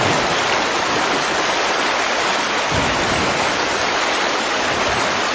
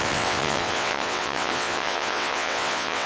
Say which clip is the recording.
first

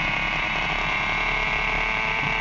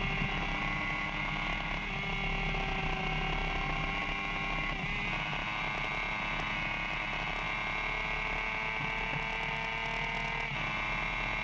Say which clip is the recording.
second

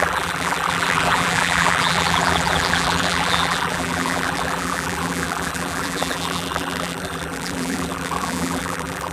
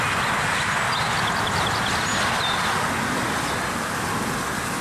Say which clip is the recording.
second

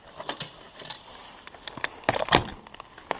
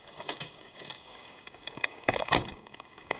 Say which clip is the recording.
first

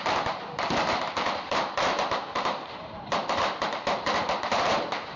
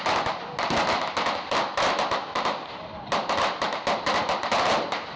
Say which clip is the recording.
second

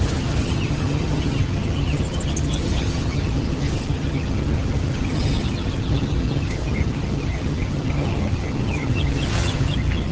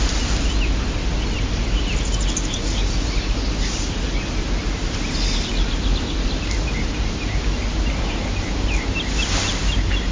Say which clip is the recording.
second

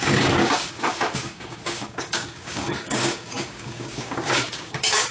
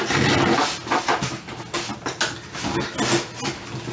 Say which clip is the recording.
second